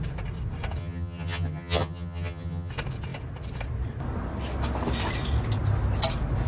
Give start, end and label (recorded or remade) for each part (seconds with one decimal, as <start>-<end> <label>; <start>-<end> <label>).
0.0-0.8 recorded; 0.8-2.7 remade; 2.7-6.5 recorded